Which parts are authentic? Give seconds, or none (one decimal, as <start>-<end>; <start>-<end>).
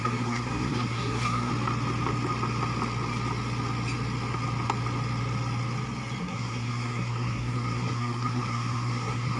1.5-6.2